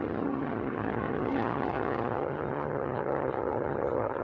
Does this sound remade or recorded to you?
remade